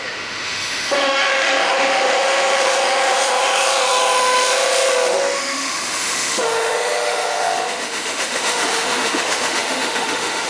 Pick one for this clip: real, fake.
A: fake